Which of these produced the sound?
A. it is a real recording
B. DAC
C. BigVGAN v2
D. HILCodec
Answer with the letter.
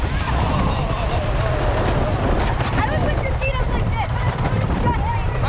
A